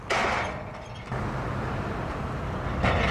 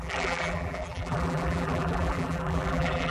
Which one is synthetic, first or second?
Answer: second